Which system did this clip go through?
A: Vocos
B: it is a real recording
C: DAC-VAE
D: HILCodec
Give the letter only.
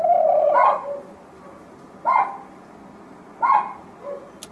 B